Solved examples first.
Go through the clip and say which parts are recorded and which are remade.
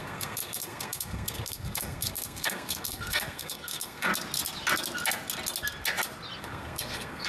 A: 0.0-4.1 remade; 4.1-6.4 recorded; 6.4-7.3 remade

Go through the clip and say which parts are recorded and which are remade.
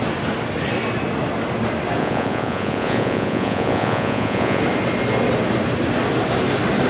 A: 0.0-2.0 recorded; 2.0-4.6 remade; 4.6-6.9 recorded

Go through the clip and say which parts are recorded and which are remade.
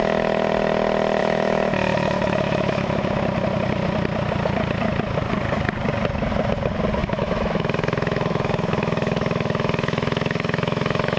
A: 0.0-1.2 recorded; 1.2-3.2 remade; 3.2-7.0 recorded; 7.0-11.2 remade